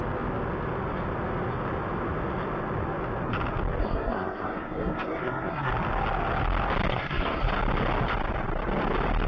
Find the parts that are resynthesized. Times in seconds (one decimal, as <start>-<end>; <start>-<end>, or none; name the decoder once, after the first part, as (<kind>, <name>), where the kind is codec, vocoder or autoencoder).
3.8-5.7 (codec, SNAC); 6.9-7.5